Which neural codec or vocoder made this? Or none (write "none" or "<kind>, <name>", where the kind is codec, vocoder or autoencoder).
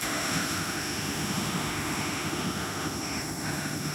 autoencoder, DAC-VAE